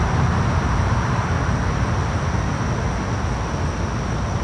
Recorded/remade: recorded